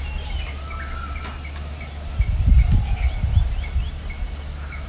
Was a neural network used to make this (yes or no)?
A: no